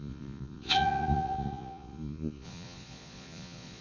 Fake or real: fake